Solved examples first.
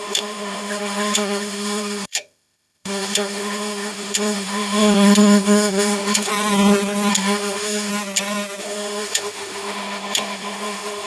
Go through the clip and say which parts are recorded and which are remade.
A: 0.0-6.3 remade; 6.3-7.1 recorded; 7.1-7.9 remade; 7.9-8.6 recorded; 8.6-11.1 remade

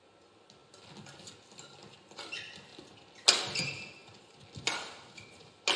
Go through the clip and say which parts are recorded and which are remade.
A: 0.0-5.8 recorded

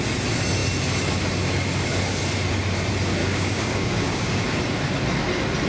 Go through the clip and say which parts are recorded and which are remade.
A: 0.0-3.2 recorded; 3.2-4.4 remade; 4.4-5.7 recorded

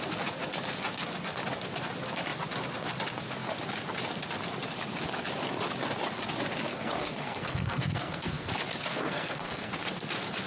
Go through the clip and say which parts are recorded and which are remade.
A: 0.0-6.7 recorded; 6.7-8.5 remade; 8.5-8.9 recorded; 8.9-9.7 remade; 9.7-10.5 recorded

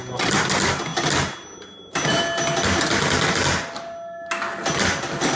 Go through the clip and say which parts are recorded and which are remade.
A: 0.0-5.4 recorded

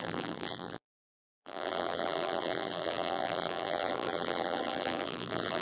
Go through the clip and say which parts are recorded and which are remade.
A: 0.0-5.6 remade

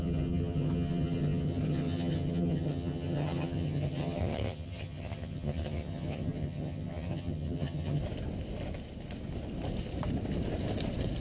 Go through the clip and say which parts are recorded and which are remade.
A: 0.0-8.0 remade; 8.0-11.2 recorded